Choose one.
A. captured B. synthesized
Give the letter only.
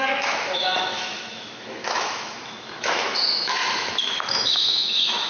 B